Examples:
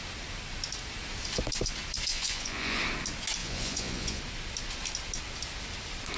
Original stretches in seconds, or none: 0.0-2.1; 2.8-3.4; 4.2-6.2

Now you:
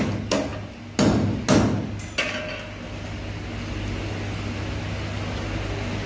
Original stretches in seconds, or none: 0.0-6.1

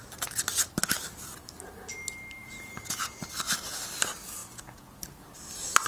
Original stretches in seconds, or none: 0.0-2.4; 3.2-4.4; 5.0-5.9

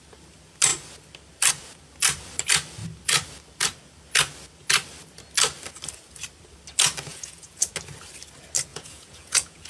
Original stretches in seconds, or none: 0.0-7.1; 7.7-8.7

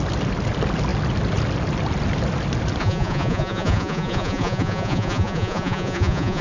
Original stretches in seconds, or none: 0.0-2.8

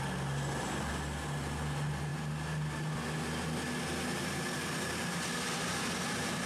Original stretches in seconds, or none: 0.0-6.5

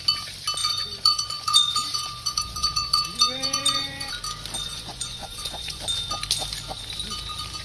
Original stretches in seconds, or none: 0.0-0.6; 4.1-4.6; 5.8-7.6

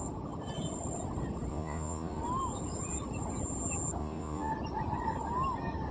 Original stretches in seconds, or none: 0.0-1.5; 2.2-4.0; 4.5-5.9